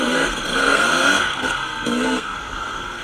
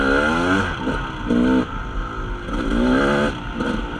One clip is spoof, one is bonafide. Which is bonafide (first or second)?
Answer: second